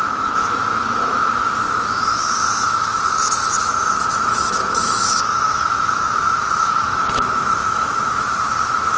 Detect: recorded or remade remade